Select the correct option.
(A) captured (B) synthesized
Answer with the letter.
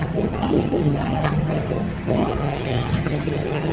B